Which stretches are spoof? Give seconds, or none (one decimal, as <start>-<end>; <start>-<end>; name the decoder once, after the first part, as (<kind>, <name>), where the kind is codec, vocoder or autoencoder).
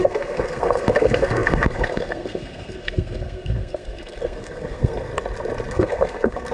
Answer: 0.0-5.1 (codec, SNAC); 5.7-6.5